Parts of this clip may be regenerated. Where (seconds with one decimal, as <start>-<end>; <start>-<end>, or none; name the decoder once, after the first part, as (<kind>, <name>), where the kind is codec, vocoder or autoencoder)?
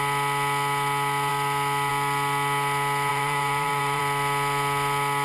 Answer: 3.1-4.0 (vocoder, BigVGAN v2)